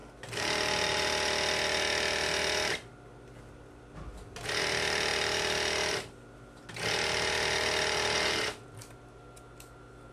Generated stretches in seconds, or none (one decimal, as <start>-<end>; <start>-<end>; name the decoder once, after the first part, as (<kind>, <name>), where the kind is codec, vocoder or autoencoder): none